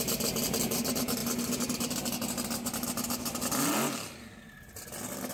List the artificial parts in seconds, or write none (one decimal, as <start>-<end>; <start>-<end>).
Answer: none